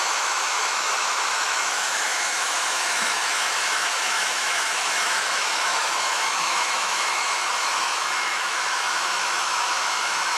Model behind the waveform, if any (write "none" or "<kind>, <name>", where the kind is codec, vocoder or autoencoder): autoencoder, DAC-VAE